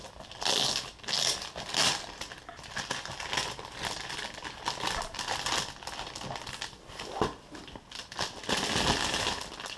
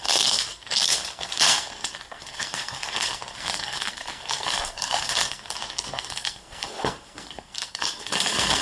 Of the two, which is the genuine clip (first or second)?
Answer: first